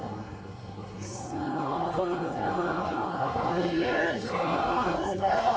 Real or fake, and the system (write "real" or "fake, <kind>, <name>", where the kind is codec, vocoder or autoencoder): fake, codec, SNAC